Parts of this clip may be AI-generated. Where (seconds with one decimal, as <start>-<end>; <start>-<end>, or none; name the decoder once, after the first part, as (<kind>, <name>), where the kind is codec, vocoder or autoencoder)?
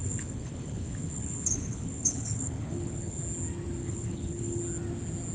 0.0-3.2 (codec, HILCodec); 3.8-4.6